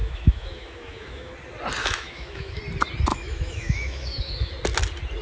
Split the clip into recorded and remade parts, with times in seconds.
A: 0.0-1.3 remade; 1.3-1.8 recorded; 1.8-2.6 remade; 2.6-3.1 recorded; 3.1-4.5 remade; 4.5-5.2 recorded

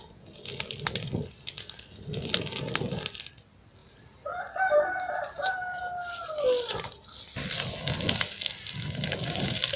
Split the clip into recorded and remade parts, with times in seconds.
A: 0.0-3.8 recorded; 3.8-5.8 remade; 5.8-9.8 recorded

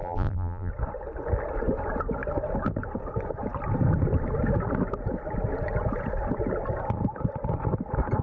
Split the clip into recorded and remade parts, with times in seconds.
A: 0.0-0.7 remade; 0.7-8.2 recorded

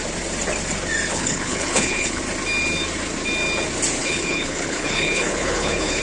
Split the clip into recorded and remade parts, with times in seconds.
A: 0.0-1.1 recorded; 1.1-2.2 remade; 2.2-4.0 recorded; 4.0-6.0 remade

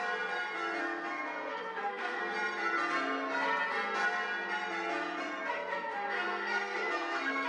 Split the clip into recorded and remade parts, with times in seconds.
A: 0.0-0.8 recorded; 0.8-2.2 remade; 2.2-5.5 recorded; 5.5-7.5 remade

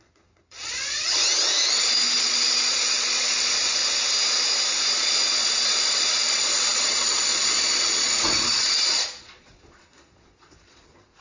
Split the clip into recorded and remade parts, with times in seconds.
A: 0.0-1.2 remade; 1.2-2.2 recorded; 2.2-3.8 remade; 3.8-4.9 recorded; 4.9-11.2 remade